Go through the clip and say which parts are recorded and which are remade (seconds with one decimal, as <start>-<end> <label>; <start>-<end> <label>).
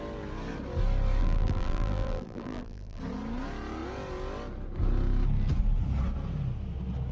0.0-1.2 recorded; 1.2-3.0 remade; 3.0-7.1 recorded